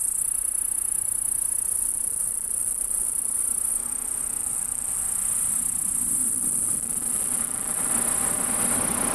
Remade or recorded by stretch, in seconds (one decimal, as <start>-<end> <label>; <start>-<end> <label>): 0.0-1.9 recorded; 1.9-3.4 remade; 3.4-4.4 recorded; 4.4-4.9 remade; 4.9-6.2 recorded; 6.2-7.9 remade; 7.9-9.1 recorded